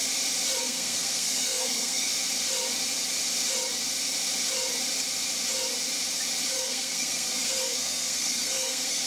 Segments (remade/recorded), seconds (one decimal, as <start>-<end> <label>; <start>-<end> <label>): 0.0-0.6 recorded; 0.6-2.1 remade; 2.1-6.5 recorded; 6.5-9.1 remade